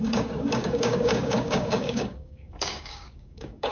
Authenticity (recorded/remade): remade